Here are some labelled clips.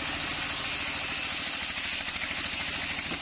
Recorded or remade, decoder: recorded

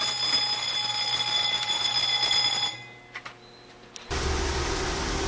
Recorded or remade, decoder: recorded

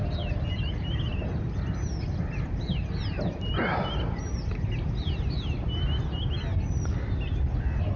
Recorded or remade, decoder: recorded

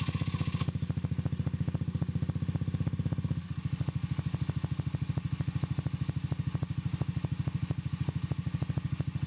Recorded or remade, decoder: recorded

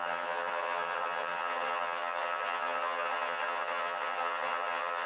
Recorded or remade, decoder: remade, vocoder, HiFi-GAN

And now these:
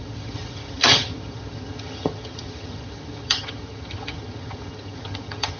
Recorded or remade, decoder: remade, vocoder, HiFi-GAN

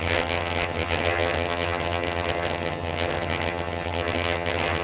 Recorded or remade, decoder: remade, vocoder, HiFi-GAN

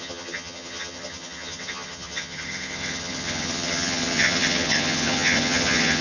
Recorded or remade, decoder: remade, vocoder, HiFi-GAN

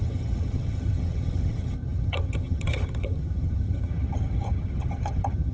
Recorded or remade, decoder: remade, vocoder, HiFi-GAN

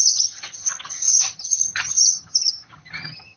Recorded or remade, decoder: remade, vocoder, HiFi-GAN